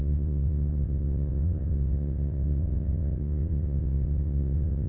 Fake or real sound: fake